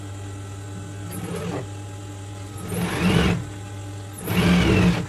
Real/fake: real